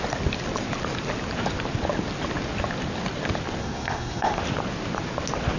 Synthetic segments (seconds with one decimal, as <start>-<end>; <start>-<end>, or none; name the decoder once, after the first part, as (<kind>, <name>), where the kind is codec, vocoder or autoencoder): 3.6-4.4 (codec, SNAC)